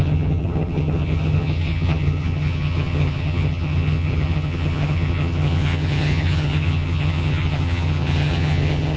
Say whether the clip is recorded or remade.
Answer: remade